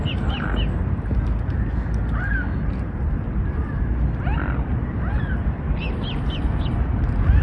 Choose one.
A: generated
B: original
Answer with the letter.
B